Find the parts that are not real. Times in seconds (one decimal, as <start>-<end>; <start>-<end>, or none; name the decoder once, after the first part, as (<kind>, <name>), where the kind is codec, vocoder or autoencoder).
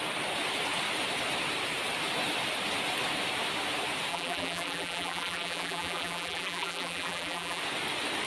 4.1-7.6 (vocoder, BigVGAN v2)